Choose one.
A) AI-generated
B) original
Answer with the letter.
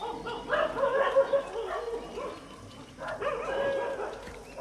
B